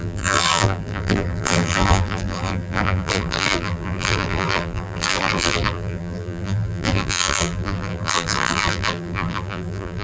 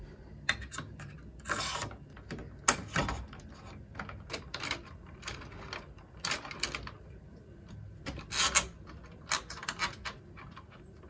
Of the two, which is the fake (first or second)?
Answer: first